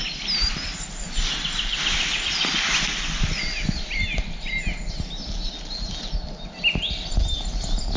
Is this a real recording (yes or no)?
yes